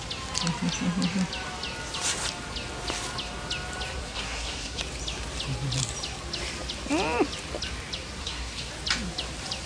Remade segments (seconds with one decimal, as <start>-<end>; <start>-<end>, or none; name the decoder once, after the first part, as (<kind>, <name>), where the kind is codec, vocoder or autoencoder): 4.0-4.8 (codec, SNAC); 8.2-8.7